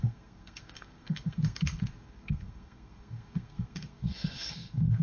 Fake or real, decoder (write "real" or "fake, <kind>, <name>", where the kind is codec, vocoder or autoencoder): fake, codec, SNAC